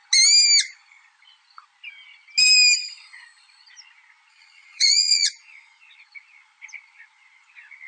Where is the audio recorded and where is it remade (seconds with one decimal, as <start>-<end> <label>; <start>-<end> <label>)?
0.0-4.3 recorded; 4.3-5.3 remade; 5.3-7.9 recorded